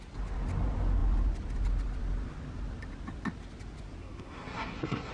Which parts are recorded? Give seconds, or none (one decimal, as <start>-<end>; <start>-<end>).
0.0-4.0

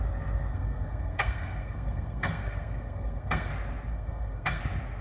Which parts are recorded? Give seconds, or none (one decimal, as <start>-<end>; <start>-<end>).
0.0-0.5; 3.5-3.9; 4.6-5.0

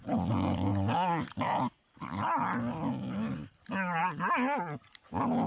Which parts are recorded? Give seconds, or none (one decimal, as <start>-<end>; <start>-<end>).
0.0-5.5

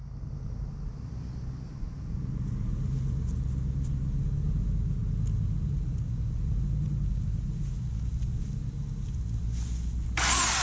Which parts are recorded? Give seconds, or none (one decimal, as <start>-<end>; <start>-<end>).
0.0-10.6

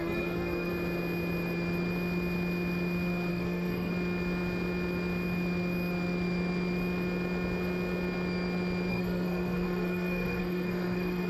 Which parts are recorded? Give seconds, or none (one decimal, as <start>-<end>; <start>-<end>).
0.7-3.3; 3.9-8.9

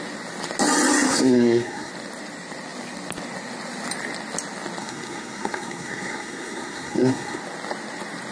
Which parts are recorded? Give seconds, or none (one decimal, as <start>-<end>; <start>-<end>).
0.0-1.1; 1.9-4.8; 7.4-8.3

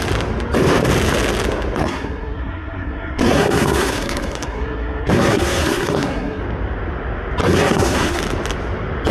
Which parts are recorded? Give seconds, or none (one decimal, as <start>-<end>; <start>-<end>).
0.0-1.8; 6.4-7.4; 8.2-9.1